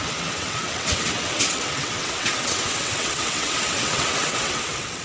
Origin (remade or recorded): remade